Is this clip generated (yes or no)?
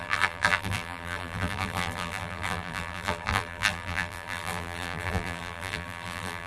yes